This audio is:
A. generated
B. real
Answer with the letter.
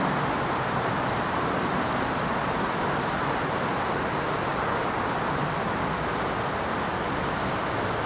B